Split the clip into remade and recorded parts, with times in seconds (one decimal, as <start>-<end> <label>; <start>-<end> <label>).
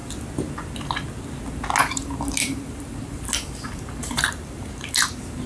0.0-1.8 recorded; 1.8-5.1 remade; 5.1-5.5 recorded